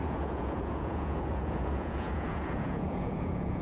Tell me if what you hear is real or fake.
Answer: fake